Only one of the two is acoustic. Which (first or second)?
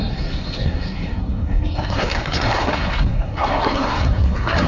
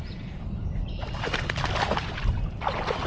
second